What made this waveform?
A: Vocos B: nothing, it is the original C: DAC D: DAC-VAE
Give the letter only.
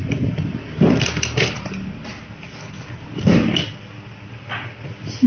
B